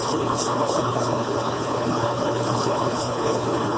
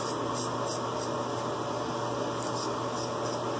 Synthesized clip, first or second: first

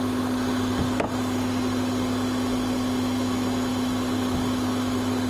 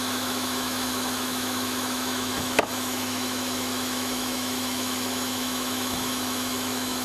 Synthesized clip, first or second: second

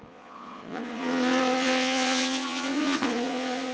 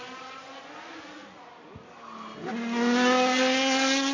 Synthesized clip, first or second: first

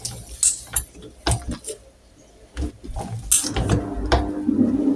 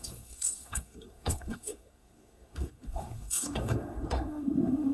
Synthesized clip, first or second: second